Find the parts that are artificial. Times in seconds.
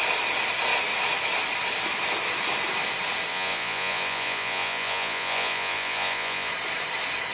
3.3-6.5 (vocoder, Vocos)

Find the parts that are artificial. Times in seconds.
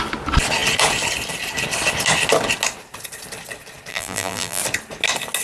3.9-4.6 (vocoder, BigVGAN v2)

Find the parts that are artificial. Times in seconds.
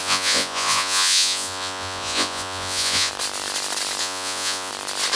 0.0-3.1 (vocoder, Vocos); 4.0-4.7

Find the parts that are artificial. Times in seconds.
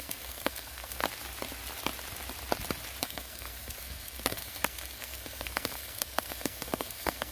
0.0-1.0 (codec, SNAC); 3.0-7.3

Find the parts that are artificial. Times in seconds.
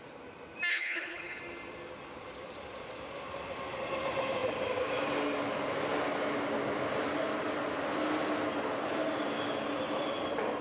0.7-1.4 (codec, HILCodec)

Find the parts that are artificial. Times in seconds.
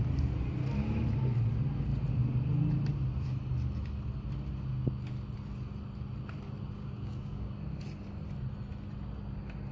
6.8-7.5 (codec, DAC)